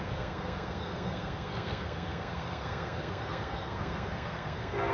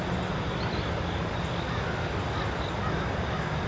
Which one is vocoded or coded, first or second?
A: first